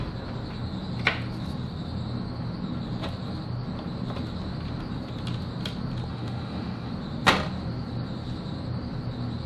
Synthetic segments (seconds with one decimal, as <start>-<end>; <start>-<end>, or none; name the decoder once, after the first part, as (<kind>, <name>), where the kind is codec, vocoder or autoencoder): 6.1-6.9 (autoencoder, DAC-VAE)